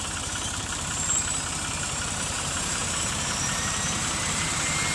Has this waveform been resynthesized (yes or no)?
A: yes